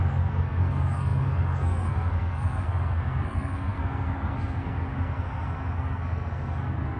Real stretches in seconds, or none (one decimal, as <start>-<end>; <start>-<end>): none